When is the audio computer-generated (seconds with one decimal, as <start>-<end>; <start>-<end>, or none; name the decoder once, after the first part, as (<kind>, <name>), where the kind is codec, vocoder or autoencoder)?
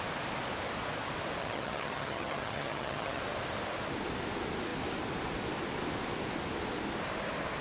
1.4-3.2 (vocoder, HiFi-GAN)